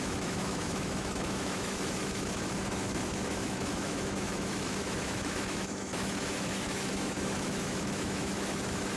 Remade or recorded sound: remade